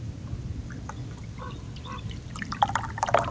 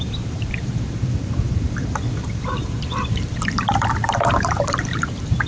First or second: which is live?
first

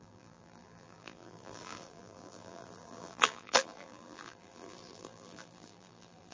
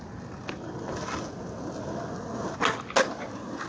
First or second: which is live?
second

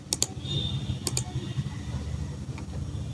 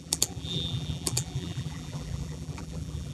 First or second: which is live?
first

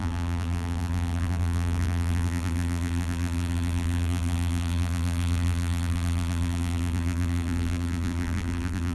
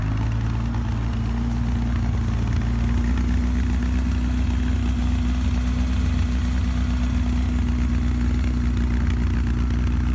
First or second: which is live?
second